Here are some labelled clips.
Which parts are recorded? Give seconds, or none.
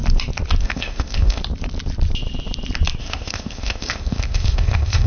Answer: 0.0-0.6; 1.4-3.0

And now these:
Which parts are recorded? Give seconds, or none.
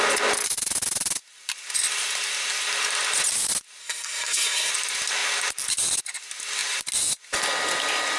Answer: 0.0-3.8; 4.7-8.2